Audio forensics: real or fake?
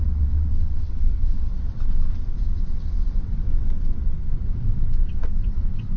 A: fake